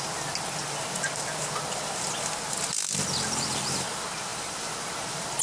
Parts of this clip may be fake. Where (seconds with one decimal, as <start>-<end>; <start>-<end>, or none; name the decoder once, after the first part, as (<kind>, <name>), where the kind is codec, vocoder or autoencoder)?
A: none